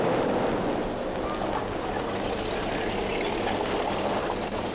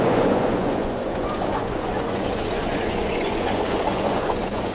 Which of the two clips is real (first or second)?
first